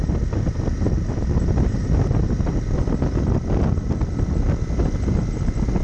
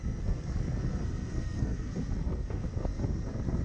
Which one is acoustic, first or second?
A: first